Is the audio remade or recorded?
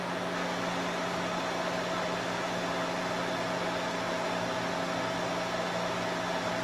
recorded